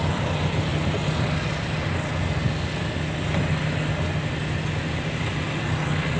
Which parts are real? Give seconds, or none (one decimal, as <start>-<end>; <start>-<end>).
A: 0.0-6.2